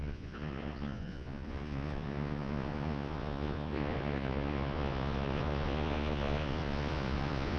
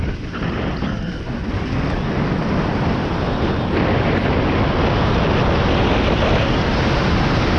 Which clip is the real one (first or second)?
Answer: second